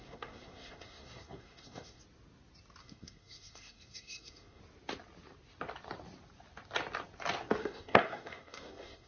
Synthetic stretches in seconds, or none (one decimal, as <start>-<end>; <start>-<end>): 0.0-2.0; 2.8-4.6; 7.6-9.1